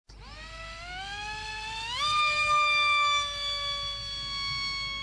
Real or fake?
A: real